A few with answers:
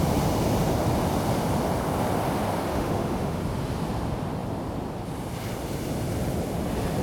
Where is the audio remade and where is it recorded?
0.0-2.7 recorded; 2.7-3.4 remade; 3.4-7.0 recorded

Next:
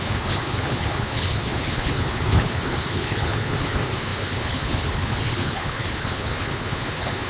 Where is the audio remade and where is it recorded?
0.0-7.3 remade